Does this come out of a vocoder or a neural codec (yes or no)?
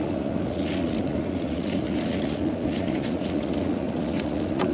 yes